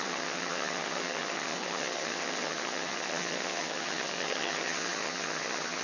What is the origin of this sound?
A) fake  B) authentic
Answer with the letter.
A